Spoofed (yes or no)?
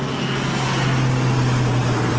no